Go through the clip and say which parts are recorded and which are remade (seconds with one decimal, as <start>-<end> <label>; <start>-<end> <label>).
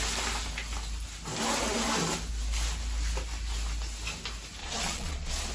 0.0-4.6 recorded; 4.6-5.5 remade